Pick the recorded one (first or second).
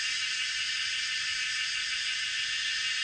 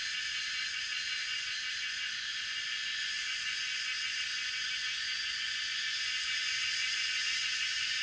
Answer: first